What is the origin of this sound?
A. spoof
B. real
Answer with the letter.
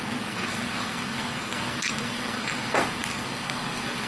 A